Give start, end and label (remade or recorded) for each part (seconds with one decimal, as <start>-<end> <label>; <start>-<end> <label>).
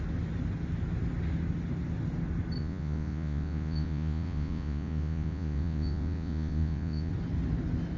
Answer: 0.0-2.6 recorded; 2.6-7.1 remade; 7.1-8.0 recorded